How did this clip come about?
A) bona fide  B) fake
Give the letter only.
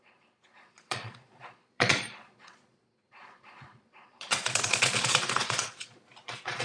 B